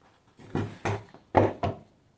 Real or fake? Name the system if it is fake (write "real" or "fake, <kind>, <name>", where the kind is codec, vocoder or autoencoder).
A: real